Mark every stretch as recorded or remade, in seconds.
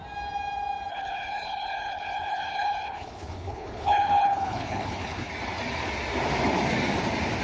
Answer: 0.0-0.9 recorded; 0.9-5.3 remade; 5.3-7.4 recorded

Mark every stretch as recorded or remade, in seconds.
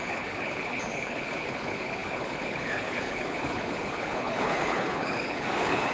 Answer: 0.0-5.9 remade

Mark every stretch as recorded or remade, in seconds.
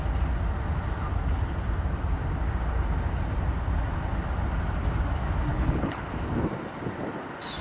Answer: 0.0-5.5 recorded; 5.5-6.1 remade; 6.1-7.6 recorded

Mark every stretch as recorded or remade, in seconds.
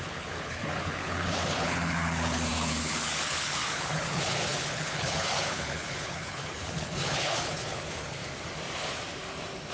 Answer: 0.0-8.2 remade; 8.2-9.7 recorded